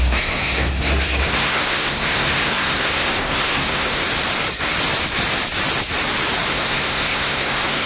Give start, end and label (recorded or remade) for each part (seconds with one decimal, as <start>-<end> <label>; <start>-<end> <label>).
0.0-4.0 remade; 4.0-6.5 recorded; 6.5-7.9 remade